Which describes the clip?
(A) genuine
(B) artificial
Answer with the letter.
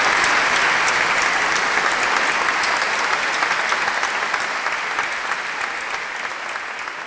A